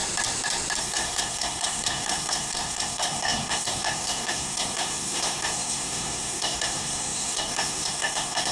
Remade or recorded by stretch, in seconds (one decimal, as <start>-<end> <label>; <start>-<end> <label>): 0.0-0.8 recorded; 0.8-8.5 remade